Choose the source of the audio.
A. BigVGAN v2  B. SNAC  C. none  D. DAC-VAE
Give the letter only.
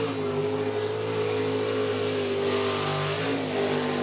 C